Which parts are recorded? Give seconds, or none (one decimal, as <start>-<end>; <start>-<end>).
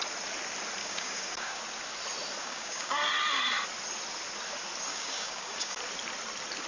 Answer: 0.0-0.8; 1.6-2.4; 3.0-4.9; 5.8-6.7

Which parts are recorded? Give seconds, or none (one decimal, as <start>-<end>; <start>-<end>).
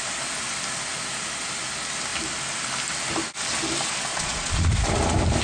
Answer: 0.0-4.1; 4.7-5.4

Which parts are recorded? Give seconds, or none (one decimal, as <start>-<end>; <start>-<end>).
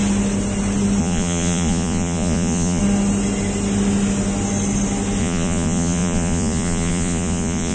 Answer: 0.0-1.0; 2.8-5.2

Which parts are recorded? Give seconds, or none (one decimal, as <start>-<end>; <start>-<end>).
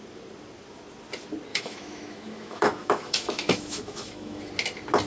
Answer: 0.0-1.5; 4.5-5.1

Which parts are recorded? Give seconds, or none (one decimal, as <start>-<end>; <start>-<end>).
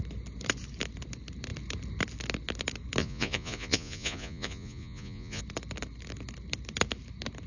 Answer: 0.0-3.0; 5.4-7.5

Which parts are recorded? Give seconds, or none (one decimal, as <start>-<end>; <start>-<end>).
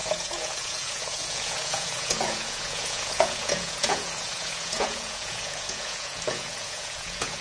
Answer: none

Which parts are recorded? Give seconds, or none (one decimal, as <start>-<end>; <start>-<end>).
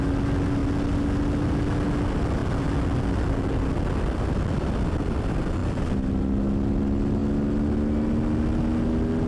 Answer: 0.0-9.3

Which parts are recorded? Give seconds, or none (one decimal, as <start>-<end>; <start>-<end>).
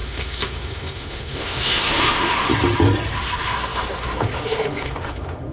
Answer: 2.5-3.1